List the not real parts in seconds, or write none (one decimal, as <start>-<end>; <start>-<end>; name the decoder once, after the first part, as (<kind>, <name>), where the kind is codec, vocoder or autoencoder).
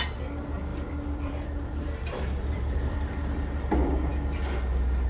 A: 0.7-3.1 (vocoder, BigVGAN v2)